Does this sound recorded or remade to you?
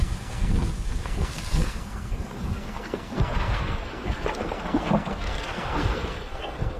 remade